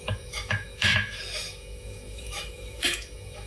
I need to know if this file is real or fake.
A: fake